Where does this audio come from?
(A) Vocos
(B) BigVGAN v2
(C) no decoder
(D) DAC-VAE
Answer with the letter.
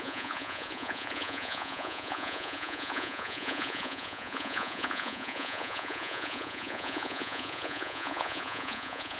A